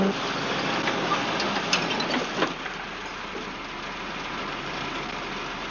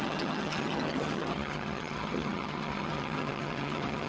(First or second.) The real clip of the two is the first